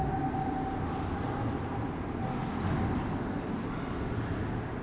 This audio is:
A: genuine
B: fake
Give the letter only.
A